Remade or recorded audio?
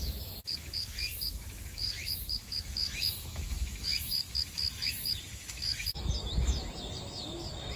remade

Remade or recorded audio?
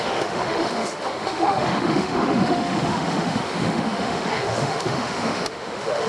remade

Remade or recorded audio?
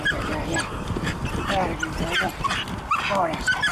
recorded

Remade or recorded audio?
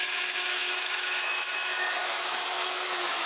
remade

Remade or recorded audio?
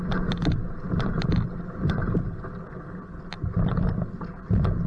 recorded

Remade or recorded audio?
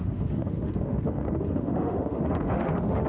remade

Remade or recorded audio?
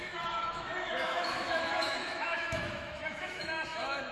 remade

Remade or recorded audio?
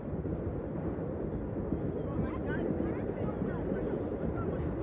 recorded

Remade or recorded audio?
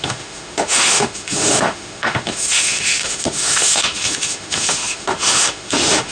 remade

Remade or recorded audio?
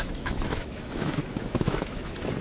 remade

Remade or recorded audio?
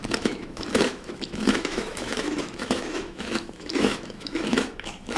remade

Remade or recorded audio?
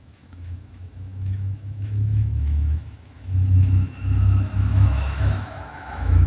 remade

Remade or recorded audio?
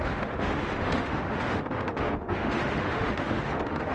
remade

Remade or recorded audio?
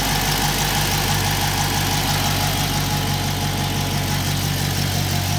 recorded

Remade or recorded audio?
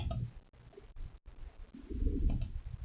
recorded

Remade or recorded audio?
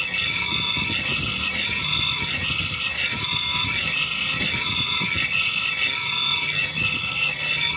recorded